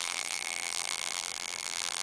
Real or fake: fake